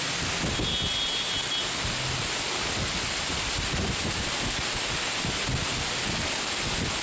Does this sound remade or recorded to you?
recorded